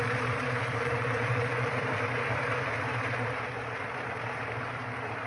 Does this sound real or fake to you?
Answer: fake